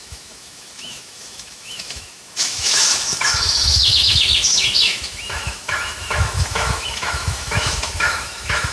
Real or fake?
fake